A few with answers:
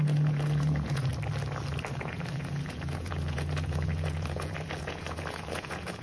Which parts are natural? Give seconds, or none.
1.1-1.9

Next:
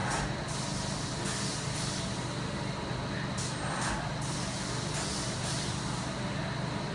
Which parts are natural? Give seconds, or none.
0.0-6.9

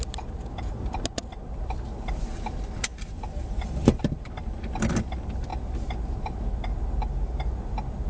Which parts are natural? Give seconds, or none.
0.0-2.9; 4.9-8.1

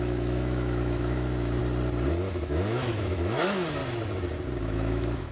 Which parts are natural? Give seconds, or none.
1.6-2.3; 3.8-4.6